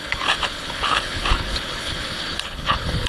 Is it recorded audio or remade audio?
remade